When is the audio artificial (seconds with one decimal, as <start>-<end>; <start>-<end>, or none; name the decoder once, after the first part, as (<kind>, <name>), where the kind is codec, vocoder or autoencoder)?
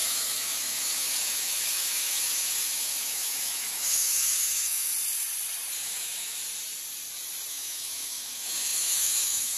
0.0-4.9 (autoencoder, DAC-VAE); 5.8-6.4; 7.5-9.6